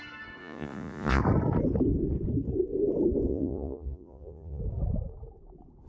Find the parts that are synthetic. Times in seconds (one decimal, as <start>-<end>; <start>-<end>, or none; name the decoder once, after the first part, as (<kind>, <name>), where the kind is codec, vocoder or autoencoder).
0.4-1.2 (vocoder, Vocos); 3.3-4.6